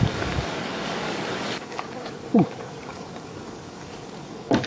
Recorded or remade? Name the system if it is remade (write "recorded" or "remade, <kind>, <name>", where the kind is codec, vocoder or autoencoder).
remade, codec, DAC